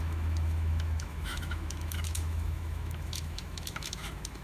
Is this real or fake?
fake